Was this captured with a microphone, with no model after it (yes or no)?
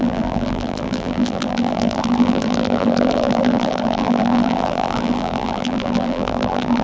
no